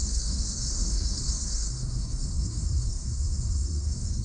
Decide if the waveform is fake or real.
fake